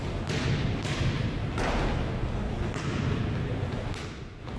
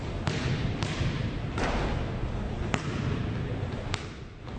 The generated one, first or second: second